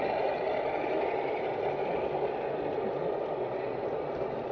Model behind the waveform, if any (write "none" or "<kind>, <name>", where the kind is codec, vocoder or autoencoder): none